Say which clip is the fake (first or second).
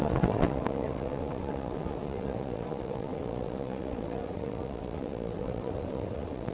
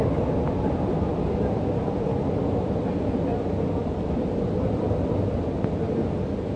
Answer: first